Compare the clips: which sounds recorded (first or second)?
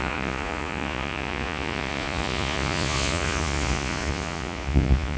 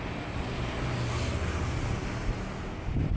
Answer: second